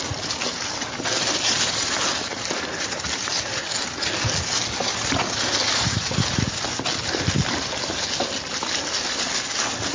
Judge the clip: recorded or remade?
recorded